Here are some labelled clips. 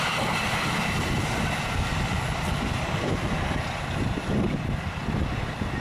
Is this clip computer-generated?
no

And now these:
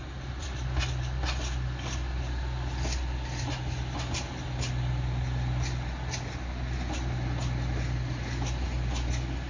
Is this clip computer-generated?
no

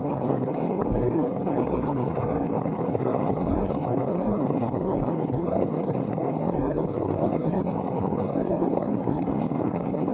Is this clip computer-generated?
yes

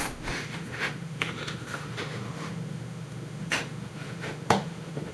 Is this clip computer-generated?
yes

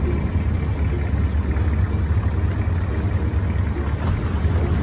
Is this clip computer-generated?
no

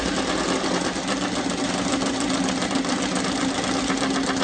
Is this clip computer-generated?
no